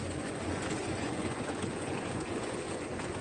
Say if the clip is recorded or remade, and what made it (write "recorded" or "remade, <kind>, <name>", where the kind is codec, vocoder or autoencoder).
remade, vocoder, Vocos